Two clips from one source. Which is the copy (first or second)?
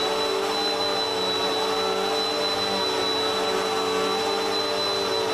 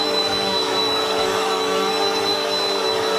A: second